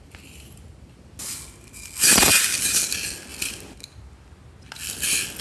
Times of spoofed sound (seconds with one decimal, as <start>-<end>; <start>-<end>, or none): none